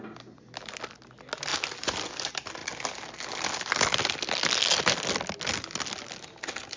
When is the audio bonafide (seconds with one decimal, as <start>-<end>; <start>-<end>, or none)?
0.0-6.8